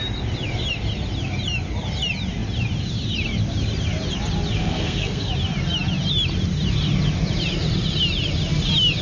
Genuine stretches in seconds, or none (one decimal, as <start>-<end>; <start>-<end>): 0.0-4.6; 5.3-9.0